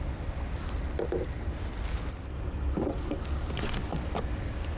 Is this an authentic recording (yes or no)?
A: yes